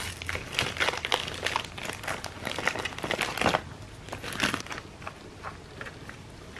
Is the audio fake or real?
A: real